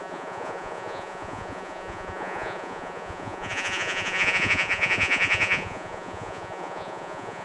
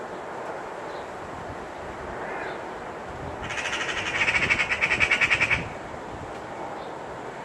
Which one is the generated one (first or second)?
first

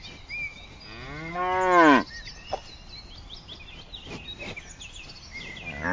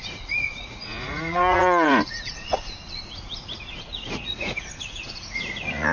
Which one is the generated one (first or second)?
second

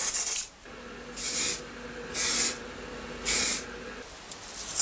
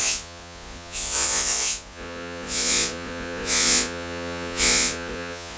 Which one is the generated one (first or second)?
second